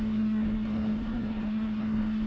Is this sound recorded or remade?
remade